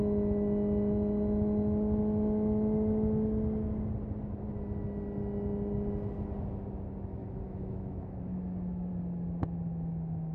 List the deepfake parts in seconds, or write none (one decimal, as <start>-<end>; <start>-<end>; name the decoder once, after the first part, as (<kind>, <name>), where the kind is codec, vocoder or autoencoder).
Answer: 7.2-8.9 (autoencoder, DAC-VAE)